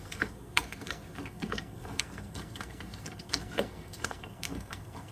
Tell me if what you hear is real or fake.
fake